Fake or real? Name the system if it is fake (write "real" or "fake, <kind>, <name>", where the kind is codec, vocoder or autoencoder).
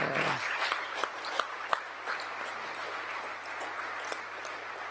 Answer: real